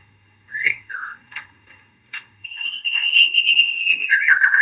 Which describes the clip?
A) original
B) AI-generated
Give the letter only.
B